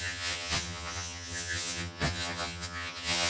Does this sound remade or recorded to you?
remade